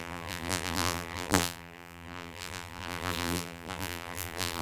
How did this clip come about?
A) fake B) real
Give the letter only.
A